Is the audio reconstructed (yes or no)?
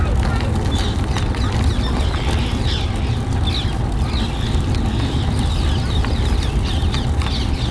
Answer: no